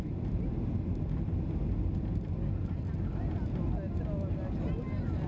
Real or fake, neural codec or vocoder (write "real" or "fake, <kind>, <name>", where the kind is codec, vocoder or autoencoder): real